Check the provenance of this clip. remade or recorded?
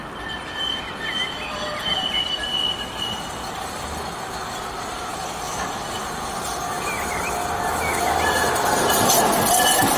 recorded